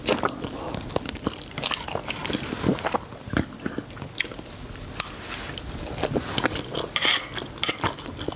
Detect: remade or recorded recorded